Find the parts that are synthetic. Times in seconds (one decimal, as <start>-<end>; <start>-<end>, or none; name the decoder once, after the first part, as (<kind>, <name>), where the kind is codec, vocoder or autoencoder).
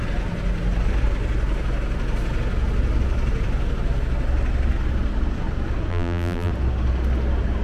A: 5.9-6.5 (vocoder, BigVGAN v2)